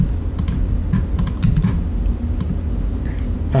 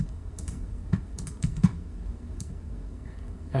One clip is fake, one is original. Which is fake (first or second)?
second